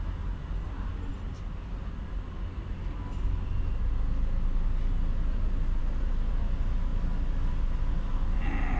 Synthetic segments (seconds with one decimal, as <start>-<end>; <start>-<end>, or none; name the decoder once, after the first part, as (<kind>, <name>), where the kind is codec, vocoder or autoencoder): none